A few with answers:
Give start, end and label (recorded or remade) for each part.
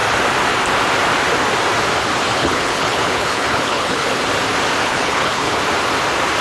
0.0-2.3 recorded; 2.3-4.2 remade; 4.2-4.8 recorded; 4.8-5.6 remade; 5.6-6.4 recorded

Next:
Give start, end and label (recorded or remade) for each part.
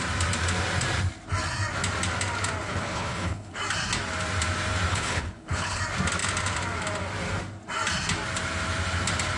0.0-2.7 recorded; 2.7-3.6 remade; 3.6-4.9 recorded; 4.9-5.8 remade; 5.8-9.4 recorded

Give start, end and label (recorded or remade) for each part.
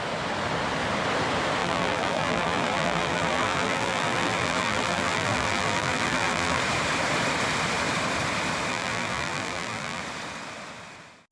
0.0-1.6 recorded; 1.6-6.6 remade; 6.6-8.7 recorded; 8.7-10.0 remade; 10.0-11.3 recorded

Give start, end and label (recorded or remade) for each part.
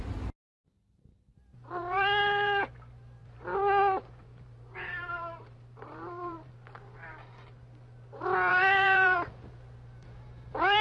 0.0-1.3 recorded; 1.3-2.6 remade; 2.6-3.2 recorded; 3.2-6.5 remade; 6.5-8.5 recorded; 8.5-9.3 remade; 9.3-10.8 recorded